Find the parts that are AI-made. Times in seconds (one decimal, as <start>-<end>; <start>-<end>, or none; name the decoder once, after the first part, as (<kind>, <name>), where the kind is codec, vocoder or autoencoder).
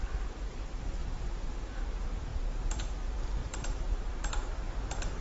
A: 1.0-1.7 (vocoder, BigVGAN v2); 2.3-2.9; 3.4-4.7